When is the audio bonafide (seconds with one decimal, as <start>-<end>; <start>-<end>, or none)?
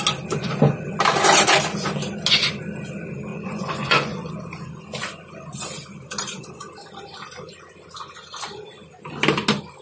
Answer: 0.0-3.3; 4.3-9.8